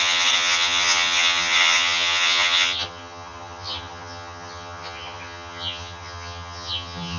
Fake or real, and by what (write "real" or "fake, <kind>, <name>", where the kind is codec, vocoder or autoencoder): fake, vocoder, HiFi-GAN